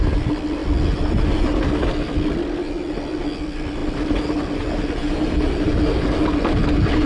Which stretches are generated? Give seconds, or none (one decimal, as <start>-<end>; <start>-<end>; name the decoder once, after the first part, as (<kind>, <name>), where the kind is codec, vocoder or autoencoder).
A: none